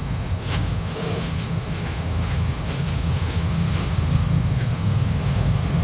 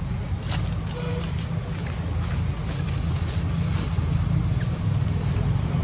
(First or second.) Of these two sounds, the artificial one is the first